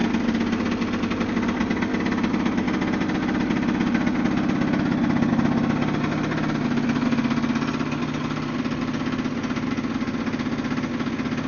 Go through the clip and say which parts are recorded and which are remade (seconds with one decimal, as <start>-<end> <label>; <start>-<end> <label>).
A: 0.0-11.5 recorded